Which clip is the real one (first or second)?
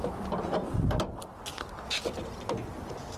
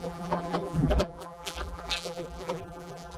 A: first